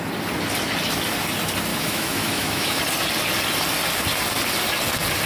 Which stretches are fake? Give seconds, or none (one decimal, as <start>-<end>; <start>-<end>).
1.7-2.8